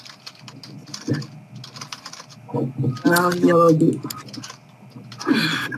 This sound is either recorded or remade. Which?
recorded